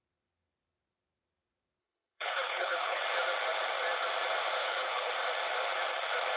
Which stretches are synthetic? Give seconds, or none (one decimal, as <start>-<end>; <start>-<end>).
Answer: 1.8-3.0; 4.6-5.1